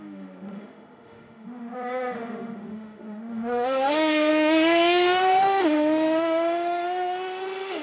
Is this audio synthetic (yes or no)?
yes